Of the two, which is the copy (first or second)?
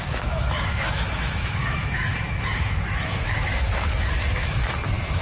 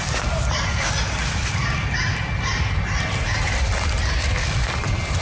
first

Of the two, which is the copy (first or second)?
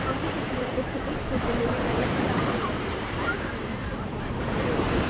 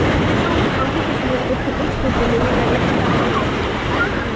first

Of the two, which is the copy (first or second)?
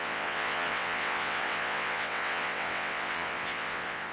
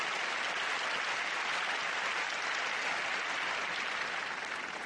first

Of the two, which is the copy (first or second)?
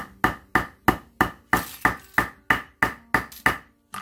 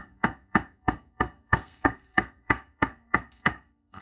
second